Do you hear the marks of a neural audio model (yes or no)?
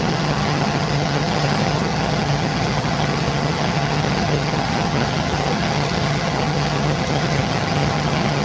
yes